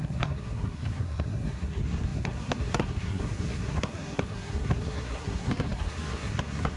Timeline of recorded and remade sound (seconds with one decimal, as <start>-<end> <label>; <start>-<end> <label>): 0.0-6.8 remade